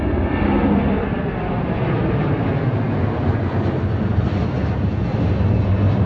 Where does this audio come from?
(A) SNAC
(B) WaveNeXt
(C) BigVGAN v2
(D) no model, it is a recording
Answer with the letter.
D